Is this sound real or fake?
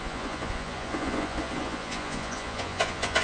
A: fake